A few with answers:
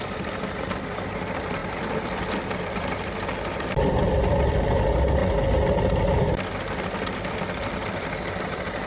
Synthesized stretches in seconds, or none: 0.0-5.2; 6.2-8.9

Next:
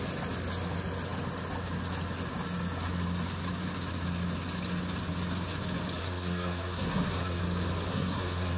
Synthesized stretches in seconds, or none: 6.0-7.4; 7.9-8.6